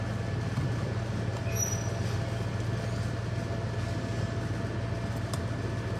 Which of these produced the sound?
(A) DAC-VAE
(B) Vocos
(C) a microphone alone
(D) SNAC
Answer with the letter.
C